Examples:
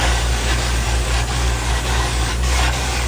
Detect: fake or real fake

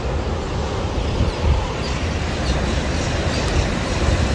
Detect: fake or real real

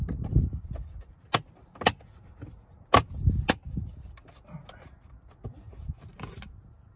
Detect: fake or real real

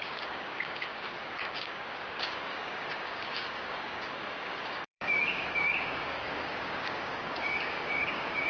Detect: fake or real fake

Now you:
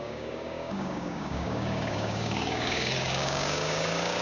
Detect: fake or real fake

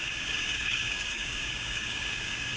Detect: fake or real fake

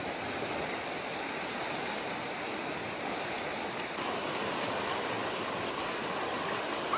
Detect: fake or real real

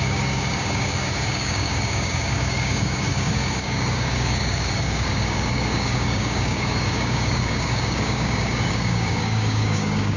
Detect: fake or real fake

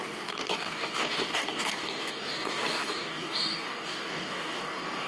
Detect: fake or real fake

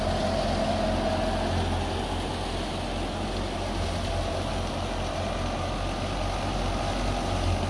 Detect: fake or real real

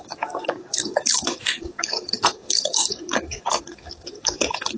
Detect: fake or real fake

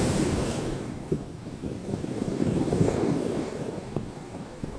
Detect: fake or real fake